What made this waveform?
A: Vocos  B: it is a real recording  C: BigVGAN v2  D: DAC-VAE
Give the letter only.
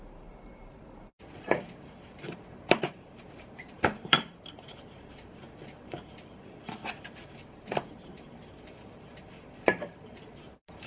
C